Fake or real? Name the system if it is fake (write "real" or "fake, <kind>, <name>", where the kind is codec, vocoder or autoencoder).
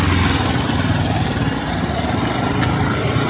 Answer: fake, vocoder, BigVGAN v2